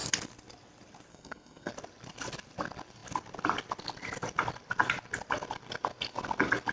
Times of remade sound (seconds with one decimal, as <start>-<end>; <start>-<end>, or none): 1.1-1.7